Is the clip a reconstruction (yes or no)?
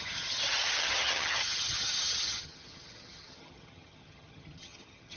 yes